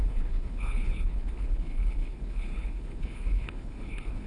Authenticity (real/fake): fake